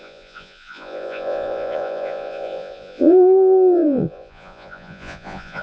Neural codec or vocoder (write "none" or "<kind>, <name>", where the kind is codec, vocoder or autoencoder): vocoder, Vocos